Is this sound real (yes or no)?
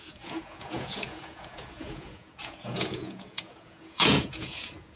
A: no